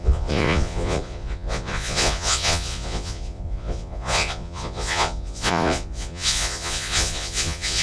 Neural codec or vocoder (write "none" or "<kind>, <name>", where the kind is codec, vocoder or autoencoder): vocoder, Vocos